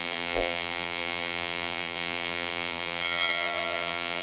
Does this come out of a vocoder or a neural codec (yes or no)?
yes